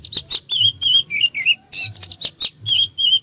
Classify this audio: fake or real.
real